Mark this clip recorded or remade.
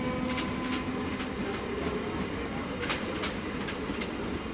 recorded